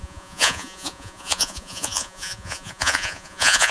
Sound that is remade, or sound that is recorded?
remade